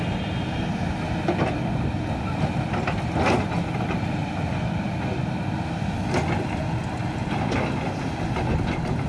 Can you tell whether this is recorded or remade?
recorded